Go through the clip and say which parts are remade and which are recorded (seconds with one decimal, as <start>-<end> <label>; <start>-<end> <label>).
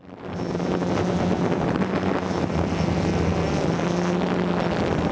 0.0-5.1 recorded